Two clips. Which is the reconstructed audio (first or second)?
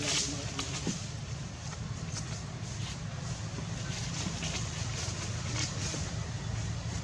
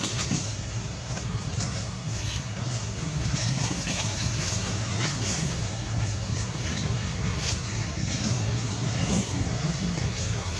second